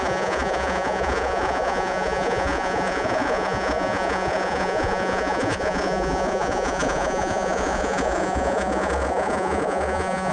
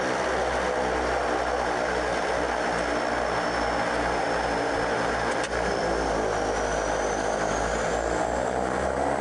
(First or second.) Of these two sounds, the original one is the second